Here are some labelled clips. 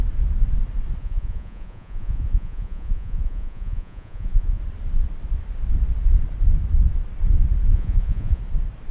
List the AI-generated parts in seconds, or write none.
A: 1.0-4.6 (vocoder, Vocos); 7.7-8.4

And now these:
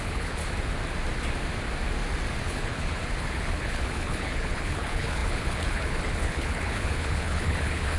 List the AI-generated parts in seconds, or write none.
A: 0.0-0.4 (codec, HILCodec); 2.4-8.0

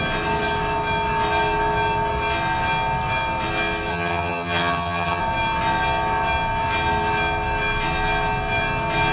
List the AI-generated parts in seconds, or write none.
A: 3.9-5.2 (vocoder, HiFi-GAN)

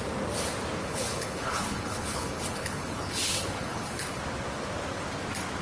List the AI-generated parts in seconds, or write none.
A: 0.8-4.2 (codec, HILCodec)

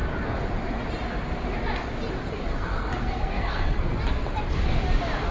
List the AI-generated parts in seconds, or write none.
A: 2.5-3.8 (codec, SNAC)

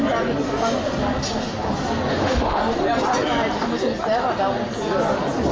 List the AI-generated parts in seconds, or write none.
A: 2.1-2.6 (autoencoder, DAC-VAE)

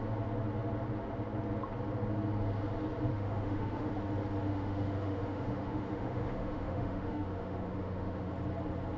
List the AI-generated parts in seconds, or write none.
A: 3.1-3.9 (autoencoder, DAC-VAE); 4.5-8.3

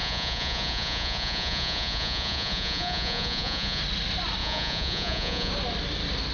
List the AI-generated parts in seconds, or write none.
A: 0.0-3.8 (vocoder, Vocos); 4.4-5.5